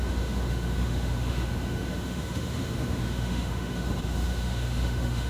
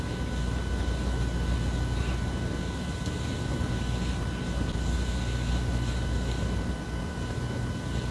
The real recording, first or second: second